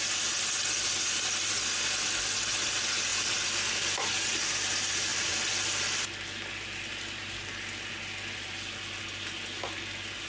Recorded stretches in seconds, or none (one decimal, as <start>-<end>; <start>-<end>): 0.0-10.3